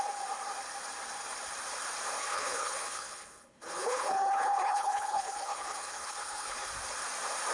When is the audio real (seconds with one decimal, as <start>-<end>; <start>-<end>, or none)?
0.0-2.2; 6.7-7.5